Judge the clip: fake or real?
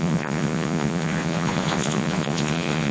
fake